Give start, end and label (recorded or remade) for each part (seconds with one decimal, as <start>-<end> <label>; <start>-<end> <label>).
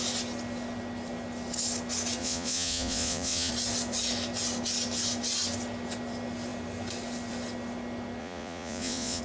0.0-2.2 recorded; 2.2-3.5 remade; 3.5-8.2 recorded; 8.2-9.2 remade